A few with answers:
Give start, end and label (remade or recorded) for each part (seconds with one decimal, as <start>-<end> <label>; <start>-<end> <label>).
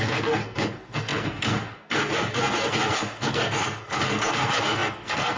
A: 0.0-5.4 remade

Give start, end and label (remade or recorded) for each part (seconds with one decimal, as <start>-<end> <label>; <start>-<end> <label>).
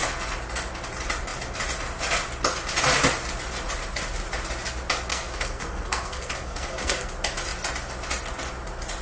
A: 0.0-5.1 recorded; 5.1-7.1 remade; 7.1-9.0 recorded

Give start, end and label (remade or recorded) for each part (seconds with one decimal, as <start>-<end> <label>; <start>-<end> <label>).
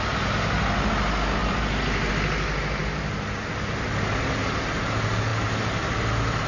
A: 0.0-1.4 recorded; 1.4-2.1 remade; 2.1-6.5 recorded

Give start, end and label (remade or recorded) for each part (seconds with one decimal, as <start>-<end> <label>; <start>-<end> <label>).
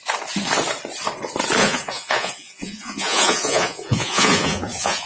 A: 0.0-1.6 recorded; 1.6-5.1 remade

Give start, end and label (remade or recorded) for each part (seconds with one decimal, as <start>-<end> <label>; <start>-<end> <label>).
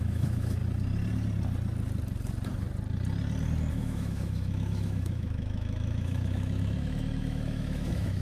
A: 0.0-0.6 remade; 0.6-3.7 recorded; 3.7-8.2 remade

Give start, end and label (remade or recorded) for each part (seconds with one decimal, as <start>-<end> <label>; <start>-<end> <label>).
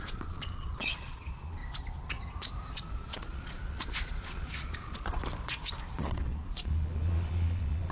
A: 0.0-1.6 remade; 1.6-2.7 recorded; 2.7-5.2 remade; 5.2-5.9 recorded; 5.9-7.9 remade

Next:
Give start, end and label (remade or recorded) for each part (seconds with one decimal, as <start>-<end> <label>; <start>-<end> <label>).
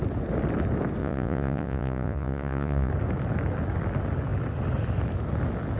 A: 0.0-1.0 recorded; 1.0-2.9 remade; 2.9-5.8 recorded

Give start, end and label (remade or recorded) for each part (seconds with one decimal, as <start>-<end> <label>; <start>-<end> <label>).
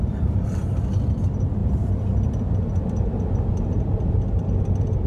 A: 0.0-5.1 recorded